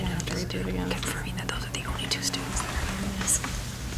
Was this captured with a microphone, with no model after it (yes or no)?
yes